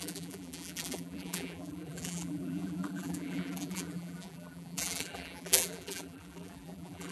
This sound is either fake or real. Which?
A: fake